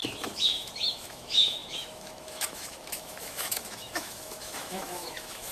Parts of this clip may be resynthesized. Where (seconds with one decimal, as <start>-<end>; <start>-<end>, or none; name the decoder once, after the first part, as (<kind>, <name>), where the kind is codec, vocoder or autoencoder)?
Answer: 0.0-5.5 (autoencoder, DAC-VAE)